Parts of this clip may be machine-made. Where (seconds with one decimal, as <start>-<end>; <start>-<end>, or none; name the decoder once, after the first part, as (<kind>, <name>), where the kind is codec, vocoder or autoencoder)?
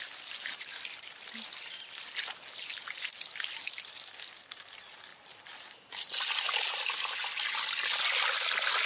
none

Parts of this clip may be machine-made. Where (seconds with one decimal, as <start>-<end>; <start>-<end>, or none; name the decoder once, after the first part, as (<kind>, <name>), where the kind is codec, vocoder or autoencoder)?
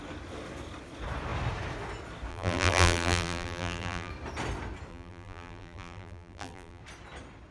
2.3-4.1 (vocoder, BigVGAN v2); 4.9-6.8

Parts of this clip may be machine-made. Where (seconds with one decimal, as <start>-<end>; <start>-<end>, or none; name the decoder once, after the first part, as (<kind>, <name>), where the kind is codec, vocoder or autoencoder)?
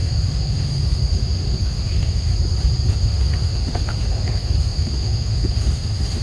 0.0-2.3 (autoencoder, DAC-VAE); 2.9-6.2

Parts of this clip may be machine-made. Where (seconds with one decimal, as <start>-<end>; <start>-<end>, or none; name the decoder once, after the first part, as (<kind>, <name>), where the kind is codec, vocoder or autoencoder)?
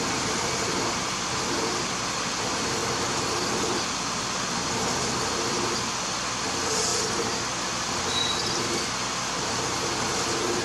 none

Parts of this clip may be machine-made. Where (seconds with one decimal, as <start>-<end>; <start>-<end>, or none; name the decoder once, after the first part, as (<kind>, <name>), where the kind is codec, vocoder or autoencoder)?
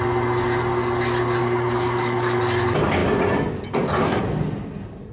1.4-2.4 (codec, DAC)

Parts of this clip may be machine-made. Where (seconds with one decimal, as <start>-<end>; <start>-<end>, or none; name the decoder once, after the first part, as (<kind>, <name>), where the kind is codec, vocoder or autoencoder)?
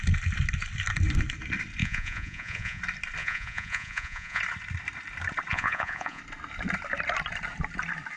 1.8-2.8 (vocoder, Vocos); 3.2-4.4; 5.5-6.2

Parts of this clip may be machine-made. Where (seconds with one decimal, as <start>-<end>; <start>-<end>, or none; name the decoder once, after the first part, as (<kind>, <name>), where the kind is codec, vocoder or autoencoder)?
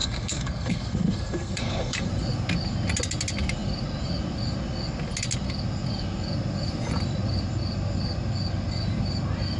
0.0-2.1 (codec, SNAC)